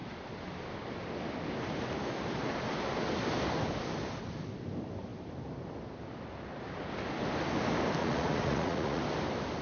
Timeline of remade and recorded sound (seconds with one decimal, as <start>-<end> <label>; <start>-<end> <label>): 0.0-8.0 recorded; 8.0-9.0 remade; 9.0-9.6 recorded